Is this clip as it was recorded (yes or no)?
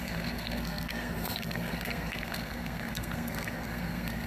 no